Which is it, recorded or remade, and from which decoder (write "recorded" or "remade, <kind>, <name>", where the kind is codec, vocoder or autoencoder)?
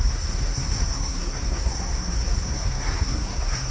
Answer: remade, codec, SNAC